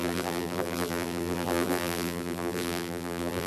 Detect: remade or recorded remade